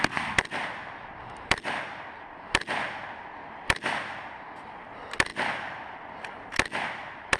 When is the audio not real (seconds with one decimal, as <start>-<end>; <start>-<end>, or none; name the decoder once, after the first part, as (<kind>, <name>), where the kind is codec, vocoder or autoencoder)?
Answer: none